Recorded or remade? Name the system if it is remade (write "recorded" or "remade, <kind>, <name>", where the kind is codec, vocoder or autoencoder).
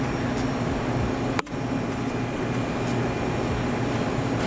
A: recorded